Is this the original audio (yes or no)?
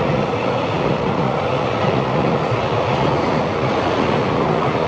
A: no